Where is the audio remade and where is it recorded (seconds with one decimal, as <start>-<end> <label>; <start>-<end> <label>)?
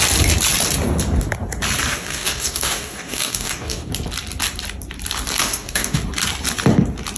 0.0-1.9 recorded; 1.9-3.9 remade; 3.9-5.4 recorded; 5.4-6.0 remade; 6.0-7.2 recorded